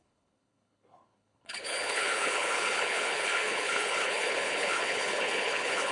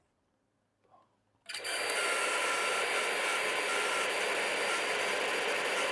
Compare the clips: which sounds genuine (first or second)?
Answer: second